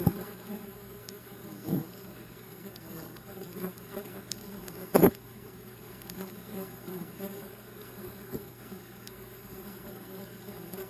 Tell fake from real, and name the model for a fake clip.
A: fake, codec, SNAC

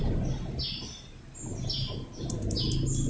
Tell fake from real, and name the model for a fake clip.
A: real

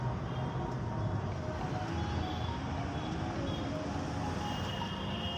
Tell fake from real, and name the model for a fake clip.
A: real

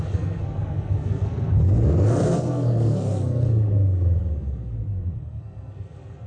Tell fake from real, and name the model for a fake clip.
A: fake, codec, SNAC